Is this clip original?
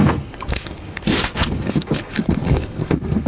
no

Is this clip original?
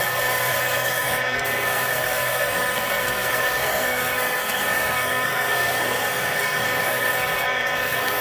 no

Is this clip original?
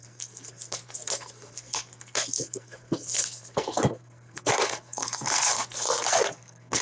no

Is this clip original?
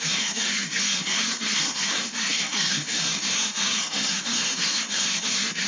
no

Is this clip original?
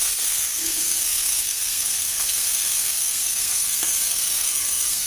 no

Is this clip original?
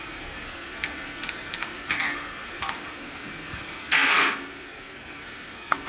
no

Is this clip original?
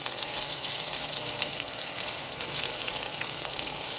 no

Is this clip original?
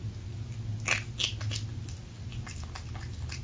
yes